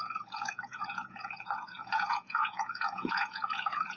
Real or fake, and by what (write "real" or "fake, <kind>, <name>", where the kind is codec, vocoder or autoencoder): fake, vocoder, Vocos